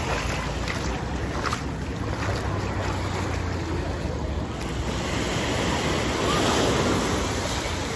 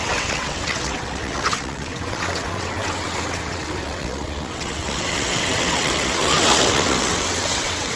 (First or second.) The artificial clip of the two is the second